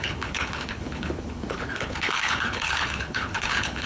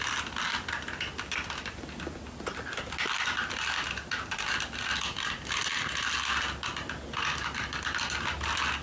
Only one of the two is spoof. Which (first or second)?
first